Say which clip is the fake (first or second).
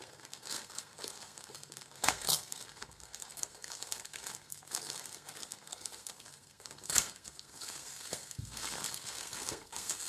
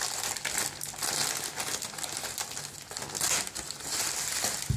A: first